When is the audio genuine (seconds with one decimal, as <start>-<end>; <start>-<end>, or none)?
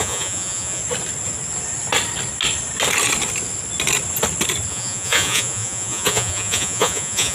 0.8-4.7